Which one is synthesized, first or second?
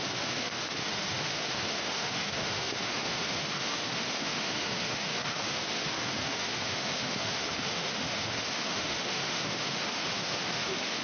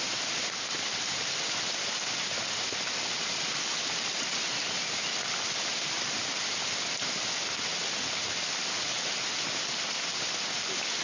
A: first